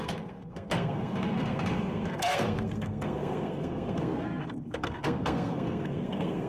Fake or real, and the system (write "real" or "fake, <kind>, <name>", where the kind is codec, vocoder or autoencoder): fake, codec, SNAC